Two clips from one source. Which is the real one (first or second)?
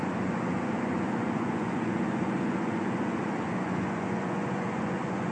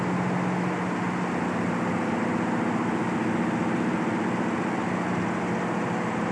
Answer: second